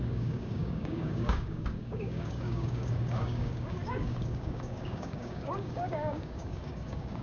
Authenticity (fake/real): fake